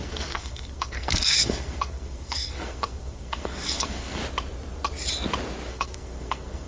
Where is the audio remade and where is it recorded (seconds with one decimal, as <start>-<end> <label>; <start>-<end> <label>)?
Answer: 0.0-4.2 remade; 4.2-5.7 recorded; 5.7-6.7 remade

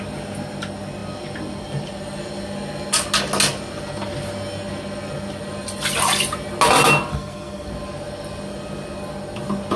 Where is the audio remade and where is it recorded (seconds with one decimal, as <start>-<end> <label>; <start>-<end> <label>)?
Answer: 0.0-7.1 recorded; 7.1-7.7 remade; 7.7-9.8 recorded

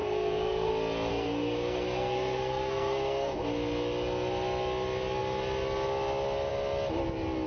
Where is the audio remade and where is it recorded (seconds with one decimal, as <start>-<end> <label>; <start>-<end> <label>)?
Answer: 0.0-0.7 remade; 0.7-1.1 recorded; 1.1-3.4 remade; 3.4-7.5 recorded

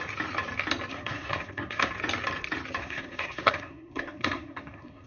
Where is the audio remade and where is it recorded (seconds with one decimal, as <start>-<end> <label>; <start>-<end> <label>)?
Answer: 0.0-0.9 recorded; 0.9-1.9 remade; 1.9-2.8 recorded; 2.8-5.1 remade